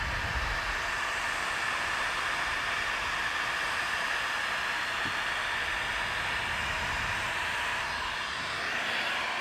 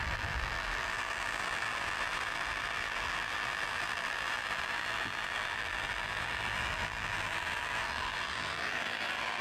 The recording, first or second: first